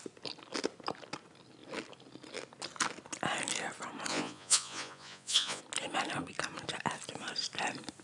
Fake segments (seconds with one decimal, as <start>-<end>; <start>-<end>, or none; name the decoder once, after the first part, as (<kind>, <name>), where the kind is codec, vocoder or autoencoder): 4.1-5.6 (vocoder, Vocos)